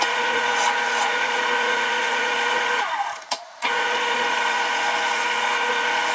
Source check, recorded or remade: remade